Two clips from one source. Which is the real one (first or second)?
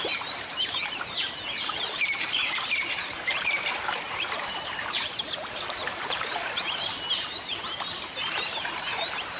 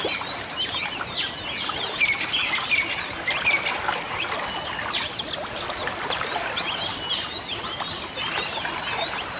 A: second